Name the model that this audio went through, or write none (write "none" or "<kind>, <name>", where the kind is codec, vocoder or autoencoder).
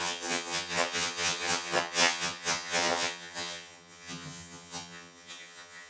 vocoder, HiFi-GAN